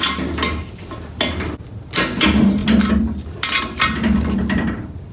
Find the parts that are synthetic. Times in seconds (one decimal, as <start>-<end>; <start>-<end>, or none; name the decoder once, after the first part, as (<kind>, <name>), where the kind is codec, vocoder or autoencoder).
none